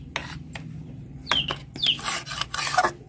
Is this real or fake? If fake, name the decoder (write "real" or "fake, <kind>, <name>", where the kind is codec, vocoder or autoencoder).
real